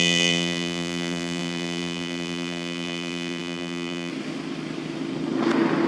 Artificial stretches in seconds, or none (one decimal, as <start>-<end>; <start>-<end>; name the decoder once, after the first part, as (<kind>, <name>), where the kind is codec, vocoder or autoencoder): 0.0-4.1 (vocoder, BigVGAN v2)